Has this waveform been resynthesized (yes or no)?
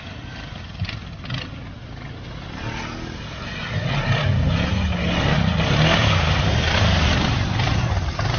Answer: no